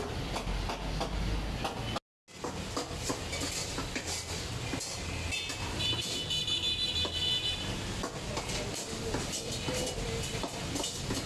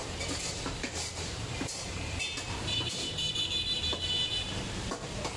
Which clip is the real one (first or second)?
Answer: first